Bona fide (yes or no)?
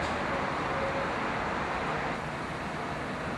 yes